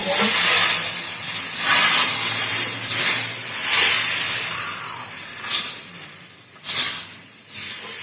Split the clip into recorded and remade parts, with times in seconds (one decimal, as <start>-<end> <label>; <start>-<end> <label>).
0.0-8.0 recorded